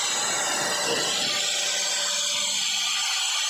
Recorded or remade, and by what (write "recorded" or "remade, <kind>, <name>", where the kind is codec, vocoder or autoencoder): recorded